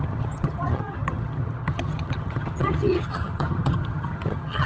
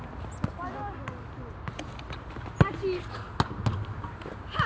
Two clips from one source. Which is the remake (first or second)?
first